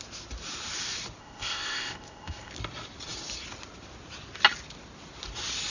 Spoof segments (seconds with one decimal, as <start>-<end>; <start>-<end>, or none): 1.2-2.5